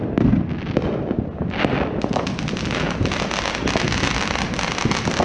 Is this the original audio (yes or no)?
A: yes